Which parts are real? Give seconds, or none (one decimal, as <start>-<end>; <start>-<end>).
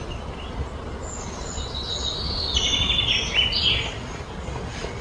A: 0.0-5.0